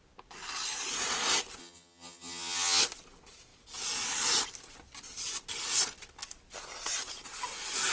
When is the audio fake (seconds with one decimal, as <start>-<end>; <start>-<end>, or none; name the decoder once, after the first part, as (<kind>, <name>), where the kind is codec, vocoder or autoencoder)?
1.6-2.8 (vocoder, HiFi-GAN)

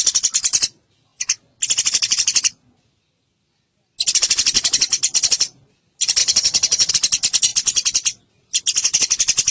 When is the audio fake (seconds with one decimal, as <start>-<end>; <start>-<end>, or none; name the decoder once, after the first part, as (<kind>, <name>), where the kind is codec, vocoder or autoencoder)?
6.2-6.9 (vocoder, HiFi-GAN)

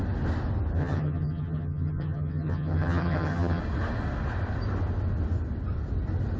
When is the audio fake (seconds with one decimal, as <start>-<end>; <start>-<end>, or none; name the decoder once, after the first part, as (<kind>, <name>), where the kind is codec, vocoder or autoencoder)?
0.8-3.6 (vocoder, HiFi-GAN)

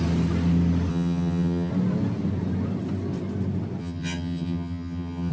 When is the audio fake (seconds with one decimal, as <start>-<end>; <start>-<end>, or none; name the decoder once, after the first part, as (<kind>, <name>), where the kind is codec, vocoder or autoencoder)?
0.9-1.7 (vocoder, HiFi-GAN); 3.8-5.3

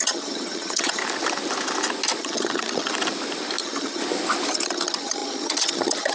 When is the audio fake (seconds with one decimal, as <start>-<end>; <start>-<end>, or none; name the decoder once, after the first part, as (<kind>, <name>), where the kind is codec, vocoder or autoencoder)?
0.0-1.0 (vocoder, HiFi-GAN); 2.2-2.9; 3.6-4.0; 4.5-6.1

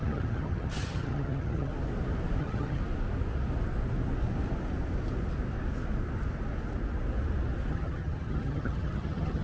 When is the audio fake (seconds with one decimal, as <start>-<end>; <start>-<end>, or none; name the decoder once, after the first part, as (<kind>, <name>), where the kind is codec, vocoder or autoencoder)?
0.0-1.7 (vocoder, HiFi-GAN); 2.4-2.8; 7.7-9.4